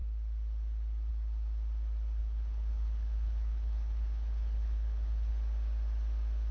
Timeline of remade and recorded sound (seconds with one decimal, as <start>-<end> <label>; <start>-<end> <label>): 0.0-2.2 recorded; 2.2-5.3 remade; 5.3-6.5 recorded